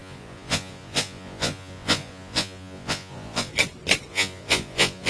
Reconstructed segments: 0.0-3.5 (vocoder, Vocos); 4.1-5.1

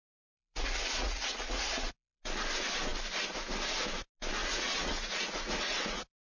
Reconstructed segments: 0.0-2.2 (vocoder, Vocos); 4.4-6.2

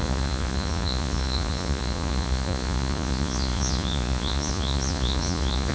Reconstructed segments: 0.0-5.7 (vocoder, Vocos)

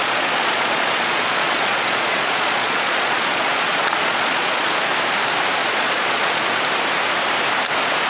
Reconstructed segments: 0.0-4.9 (vocoder, Vocos); 5.6-6.4

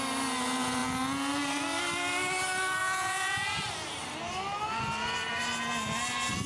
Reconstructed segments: 2.8-3.6 (vocoder, Vocos)